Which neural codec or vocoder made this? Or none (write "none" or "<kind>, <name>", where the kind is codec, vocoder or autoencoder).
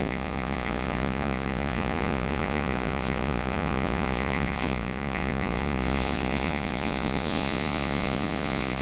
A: vocoder, Vocos